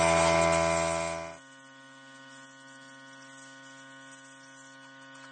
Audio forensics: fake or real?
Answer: real